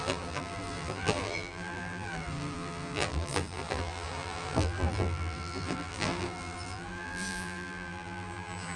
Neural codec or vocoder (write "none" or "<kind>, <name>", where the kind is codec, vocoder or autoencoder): vocoder, BigVGAN v2